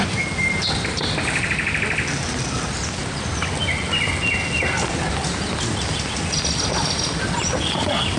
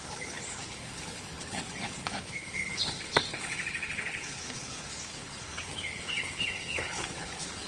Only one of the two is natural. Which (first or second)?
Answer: first